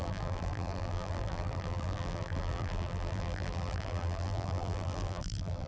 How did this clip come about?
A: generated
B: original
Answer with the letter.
A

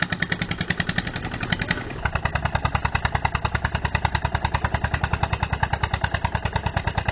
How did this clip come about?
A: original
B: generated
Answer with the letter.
A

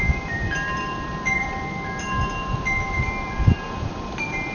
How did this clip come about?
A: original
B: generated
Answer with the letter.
B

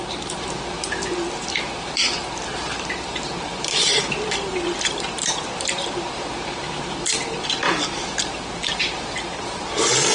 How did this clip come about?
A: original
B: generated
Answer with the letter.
B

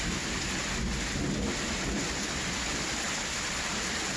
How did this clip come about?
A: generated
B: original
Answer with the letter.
B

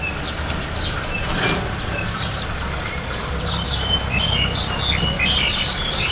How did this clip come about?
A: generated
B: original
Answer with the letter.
A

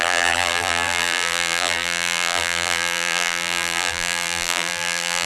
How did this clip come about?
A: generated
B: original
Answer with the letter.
A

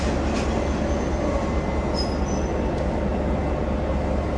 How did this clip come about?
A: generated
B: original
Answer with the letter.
B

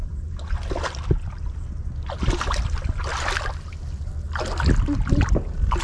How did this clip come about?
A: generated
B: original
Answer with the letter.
B